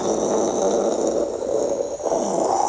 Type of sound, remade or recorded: recorded